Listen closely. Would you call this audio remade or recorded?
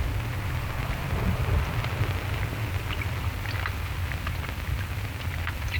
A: recorded